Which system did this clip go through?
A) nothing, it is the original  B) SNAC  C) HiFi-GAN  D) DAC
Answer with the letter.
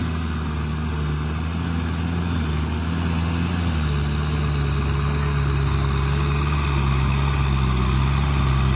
A